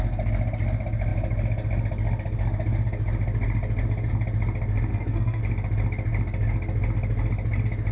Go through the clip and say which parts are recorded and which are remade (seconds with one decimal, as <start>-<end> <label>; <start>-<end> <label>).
0.0-4.9 recorded; 4.9-5.4 remade; 5.4-7.9 recorded